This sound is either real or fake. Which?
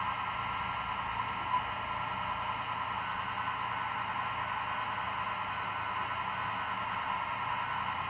real